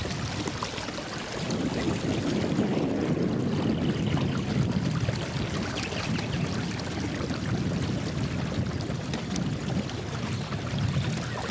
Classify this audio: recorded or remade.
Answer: recorded